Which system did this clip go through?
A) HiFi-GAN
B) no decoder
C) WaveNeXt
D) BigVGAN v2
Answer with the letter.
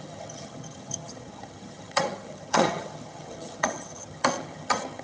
A